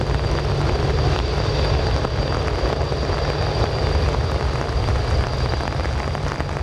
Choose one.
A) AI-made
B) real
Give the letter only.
B